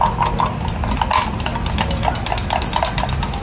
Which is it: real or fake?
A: real